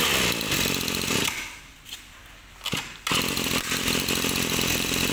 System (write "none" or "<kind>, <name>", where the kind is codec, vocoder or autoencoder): none